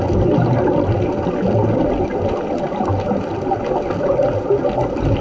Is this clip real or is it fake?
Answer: real